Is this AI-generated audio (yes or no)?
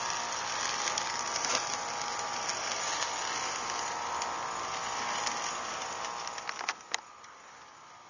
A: no